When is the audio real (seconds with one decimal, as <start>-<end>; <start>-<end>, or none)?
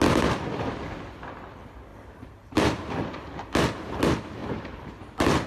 0.0-1.9; 2.9-4.4; 4.9-5.5